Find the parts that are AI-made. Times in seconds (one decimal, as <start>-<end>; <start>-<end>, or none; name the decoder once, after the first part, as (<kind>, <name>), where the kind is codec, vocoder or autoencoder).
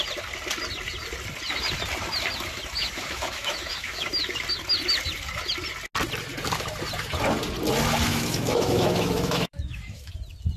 2.8-4.1 (autoencoder, DAC-VAE); 8.1-10.1